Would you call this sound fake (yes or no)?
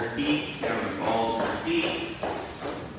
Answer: no